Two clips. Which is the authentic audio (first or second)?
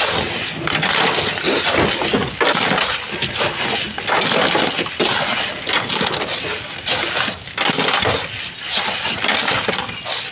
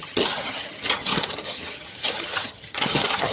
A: first